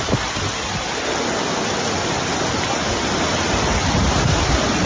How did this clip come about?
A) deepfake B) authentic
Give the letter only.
B